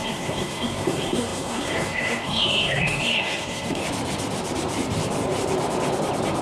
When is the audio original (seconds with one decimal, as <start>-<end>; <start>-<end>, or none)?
3.8-6.4